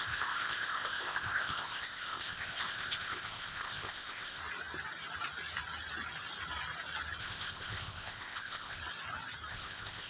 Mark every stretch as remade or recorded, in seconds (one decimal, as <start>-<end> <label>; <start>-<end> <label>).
0.0-4.4 remade; 4.4-7.2 recorded; 7.2-8.8 remade; 8.8-9.5 recorded; 9.5-10.1 remade